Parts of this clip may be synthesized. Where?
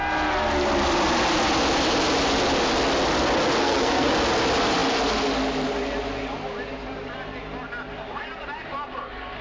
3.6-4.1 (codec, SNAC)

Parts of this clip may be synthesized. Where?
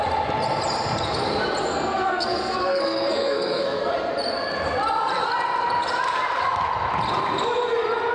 1.7-3.9 (codec, SNAC)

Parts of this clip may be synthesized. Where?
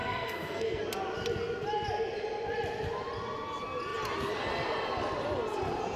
0.0-0.8 (codec, SNAC)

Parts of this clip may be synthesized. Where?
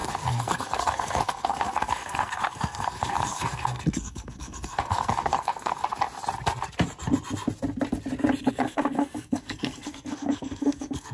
0.0-5.8 (codec, SNAC); 8.5-11.1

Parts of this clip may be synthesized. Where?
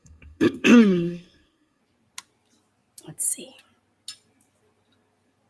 0.0-1.8 (codec, SNAC)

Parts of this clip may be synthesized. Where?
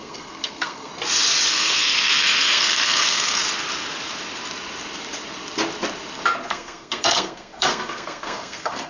0.0-0.9 (codec, SNAC); 1.5-3.4; 6.5-8.9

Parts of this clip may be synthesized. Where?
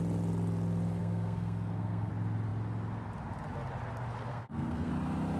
1.0-2.1 (codec, SNAC); 4.3-4.9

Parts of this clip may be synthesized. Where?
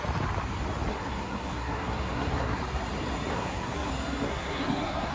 0.9-2.6 (codec, SNAC); 3.3-3.9; 4.3-5.1